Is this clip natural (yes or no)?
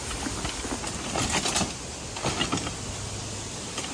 yes